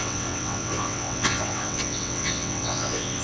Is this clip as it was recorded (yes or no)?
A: no